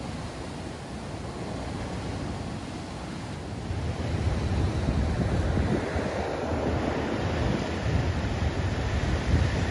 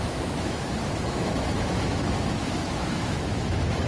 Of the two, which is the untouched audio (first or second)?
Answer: first